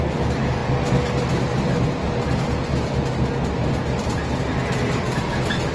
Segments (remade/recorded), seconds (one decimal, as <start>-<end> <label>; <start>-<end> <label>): 0.0-5.7 recorded